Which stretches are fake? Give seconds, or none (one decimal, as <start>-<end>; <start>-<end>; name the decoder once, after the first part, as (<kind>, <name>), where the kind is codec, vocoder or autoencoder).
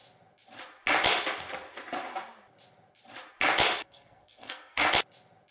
3.8-4.9 (codec, SNAC)